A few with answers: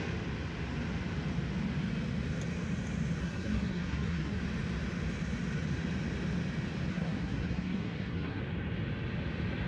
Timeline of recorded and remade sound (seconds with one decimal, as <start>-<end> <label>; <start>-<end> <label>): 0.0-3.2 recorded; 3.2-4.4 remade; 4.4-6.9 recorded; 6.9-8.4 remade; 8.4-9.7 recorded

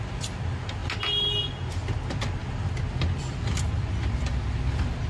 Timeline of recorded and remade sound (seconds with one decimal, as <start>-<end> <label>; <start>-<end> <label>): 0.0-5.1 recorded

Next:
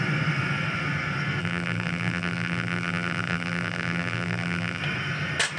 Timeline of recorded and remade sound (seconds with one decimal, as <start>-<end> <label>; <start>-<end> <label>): 0.0-1.4 recorded; 1.4-4.8 remade; 4.8-5.6 recorded

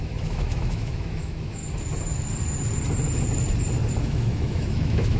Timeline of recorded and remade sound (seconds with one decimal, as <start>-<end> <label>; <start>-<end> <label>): 0.0-1.6 remade; 1.6-4.0 recorded; 4.0-5.2 remade

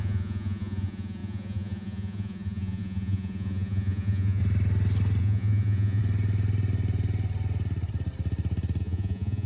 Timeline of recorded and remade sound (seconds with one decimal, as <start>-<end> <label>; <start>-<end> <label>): 0.0-4.4 remade; 4.4-5.2 recorded; 5.2-6.0 remade; 6.0-8.8 recorded; 8.8-9.5 remade

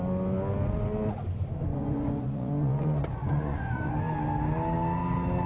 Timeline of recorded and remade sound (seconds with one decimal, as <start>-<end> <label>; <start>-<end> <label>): 0.0-1.7 recorded; 1.7-3.9 remade; 3.9-5.5 recorded

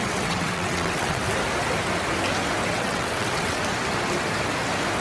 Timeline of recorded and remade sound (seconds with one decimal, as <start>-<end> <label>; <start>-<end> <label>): 0.0-1.2 remade; 1.2-2.7 recorded; 2.7-3.6 remade; 3.6-5.0 recorded

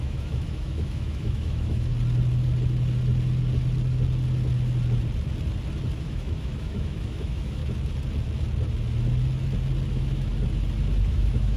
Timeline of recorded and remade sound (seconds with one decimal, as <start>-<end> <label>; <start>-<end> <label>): 0.0-1.9 remade; 1.9-6.0 recorded; 6.0-7.6 remade; 7.6-9.9 recorded; 9.9-10.3 remade; 10.3-11.1 recorded; 11.1-11.6 remade